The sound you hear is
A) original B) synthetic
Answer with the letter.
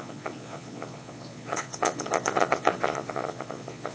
B